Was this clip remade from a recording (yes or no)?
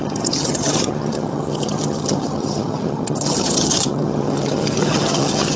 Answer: yes